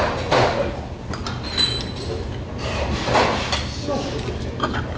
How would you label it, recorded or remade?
recorded